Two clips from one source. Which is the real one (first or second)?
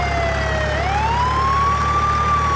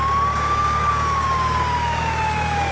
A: first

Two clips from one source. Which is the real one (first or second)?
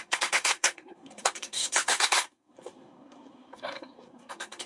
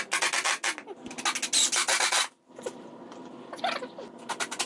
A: second